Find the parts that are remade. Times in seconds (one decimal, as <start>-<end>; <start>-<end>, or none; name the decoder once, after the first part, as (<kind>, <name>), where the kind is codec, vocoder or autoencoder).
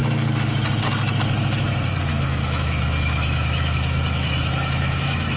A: 2.1-5.4 (autoencoder, DAC-VAE)